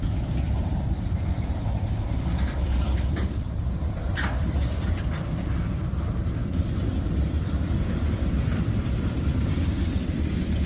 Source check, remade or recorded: remade